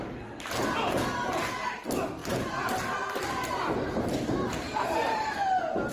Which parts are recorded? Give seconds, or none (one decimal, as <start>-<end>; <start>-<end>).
0.0-2.2